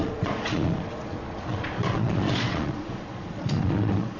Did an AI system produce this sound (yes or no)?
yes